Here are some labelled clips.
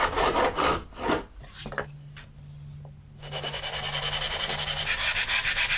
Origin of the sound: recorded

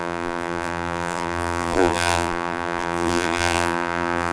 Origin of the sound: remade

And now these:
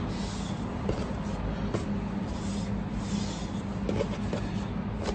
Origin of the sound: recorded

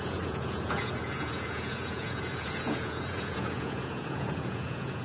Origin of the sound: remade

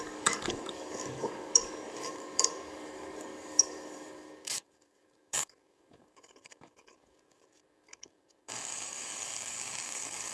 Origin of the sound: remade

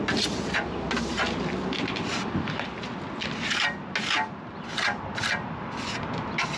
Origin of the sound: recorded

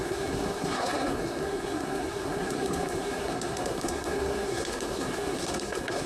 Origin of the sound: remade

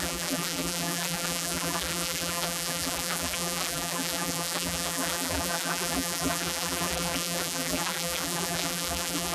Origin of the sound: remade